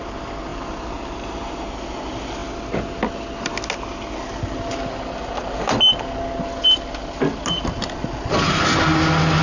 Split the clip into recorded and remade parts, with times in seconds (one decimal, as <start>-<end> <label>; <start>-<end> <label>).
0.0-0.5 recorded; 0.5-1.7 remade; 1.7-9.4 recorded

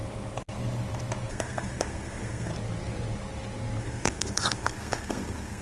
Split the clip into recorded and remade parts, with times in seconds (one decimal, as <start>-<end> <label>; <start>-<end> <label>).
0.0-1.3 recorded; 1.3-2.5 remade; 2.5-3.8 recorded; 3.8-5.6 remade

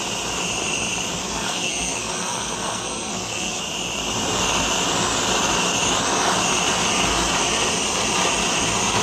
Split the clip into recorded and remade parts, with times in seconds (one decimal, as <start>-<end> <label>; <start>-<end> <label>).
0.0-1.2 recorded; 1.2-3.6 remade; 3.6-9.0 recorded